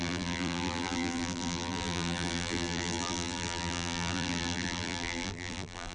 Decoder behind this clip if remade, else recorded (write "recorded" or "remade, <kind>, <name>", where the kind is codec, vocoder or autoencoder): remade, vocoder, BigVGAN v2